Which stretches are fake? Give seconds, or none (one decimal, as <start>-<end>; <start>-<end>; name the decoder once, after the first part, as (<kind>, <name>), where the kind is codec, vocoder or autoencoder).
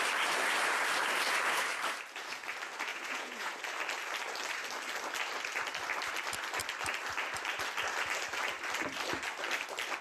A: 2.9-3.6 (vocoder, Vocos)